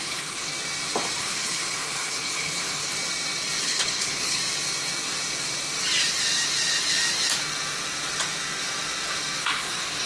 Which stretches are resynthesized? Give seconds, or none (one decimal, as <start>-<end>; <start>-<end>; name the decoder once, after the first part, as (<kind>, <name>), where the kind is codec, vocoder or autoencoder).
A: 0.0-0.5 (codec, HILCodec); 1.2-2.9; 3.6-4.4; 9.4-10.1